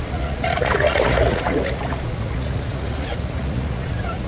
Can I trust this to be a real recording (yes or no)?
no